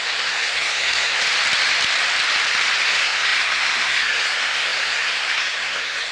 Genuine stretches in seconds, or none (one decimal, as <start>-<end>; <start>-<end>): 1.2-2.8